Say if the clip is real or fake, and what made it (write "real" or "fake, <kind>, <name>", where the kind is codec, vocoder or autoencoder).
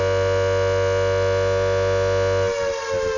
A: real